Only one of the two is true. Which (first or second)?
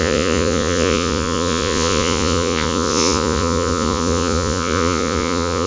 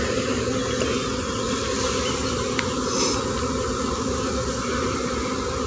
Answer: second